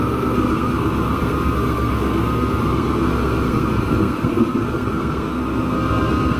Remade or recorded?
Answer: remade